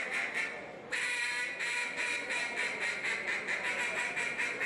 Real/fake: real